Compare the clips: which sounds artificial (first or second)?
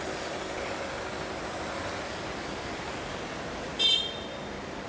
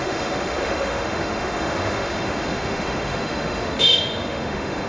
second